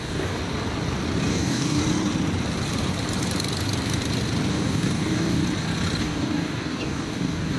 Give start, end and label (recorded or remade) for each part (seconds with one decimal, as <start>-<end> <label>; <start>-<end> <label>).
0.0-0.4 remade; 0.4-1.3 recorded; 1.3-1.8 remade; 1.8-4.5 recorded; 4.5-5.4 remade; 5.4-6.0 recorded; 6.0-7.6 remade